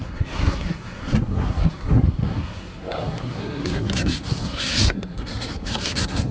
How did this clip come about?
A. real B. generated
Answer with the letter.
B